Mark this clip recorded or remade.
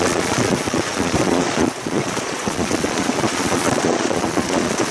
remade